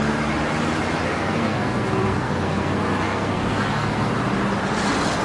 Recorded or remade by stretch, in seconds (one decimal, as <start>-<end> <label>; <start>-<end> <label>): 0.0-1.0 recorded; 1.0-4.1 remade; 4.1-5.2 recorded

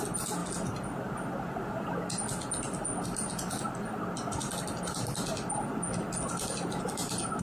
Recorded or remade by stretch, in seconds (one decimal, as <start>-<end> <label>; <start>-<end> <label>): 0.0-7.4 recorded

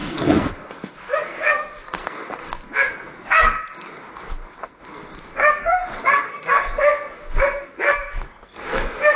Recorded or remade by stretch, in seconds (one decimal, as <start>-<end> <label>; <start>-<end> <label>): 0.0-9.2 remade

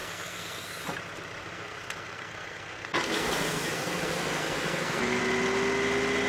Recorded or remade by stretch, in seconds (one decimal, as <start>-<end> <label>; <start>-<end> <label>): 0.0-0.8 remade; 0.8-1.4 recorded; 1.4-5.2 remade; 5.2-6.3 recorded